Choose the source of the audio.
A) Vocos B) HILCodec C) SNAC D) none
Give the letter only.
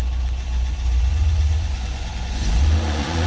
A